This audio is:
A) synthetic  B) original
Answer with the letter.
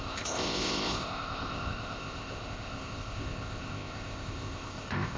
A